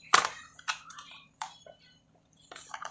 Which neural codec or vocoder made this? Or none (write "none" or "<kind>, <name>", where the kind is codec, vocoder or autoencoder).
vocoder, BigVGAN v2